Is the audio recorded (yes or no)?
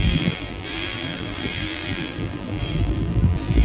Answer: no